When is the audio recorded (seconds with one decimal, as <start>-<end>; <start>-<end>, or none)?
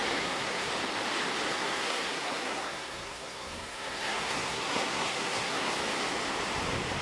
0.7-1.5; 5.7-7.0